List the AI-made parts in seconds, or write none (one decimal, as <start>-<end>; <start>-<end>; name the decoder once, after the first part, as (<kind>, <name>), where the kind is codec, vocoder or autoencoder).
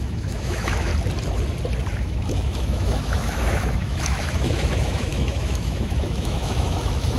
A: 0.0-0.9 (autoencoder, DAC-VAE); 1.9-7.2